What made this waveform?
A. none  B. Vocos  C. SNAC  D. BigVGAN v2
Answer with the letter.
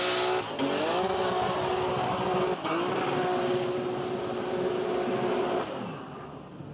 A